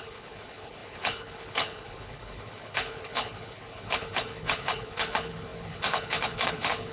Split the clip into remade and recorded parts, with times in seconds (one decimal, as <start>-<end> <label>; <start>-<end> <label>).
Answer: 0.0-6.9 remade